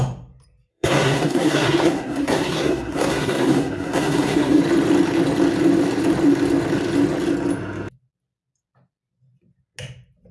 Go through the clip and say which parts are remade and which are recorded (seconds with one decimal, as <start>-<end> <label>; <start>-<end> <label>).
0.0-0.7 recorded; 0.7-4.6 remade; 4.6-10.3 recorded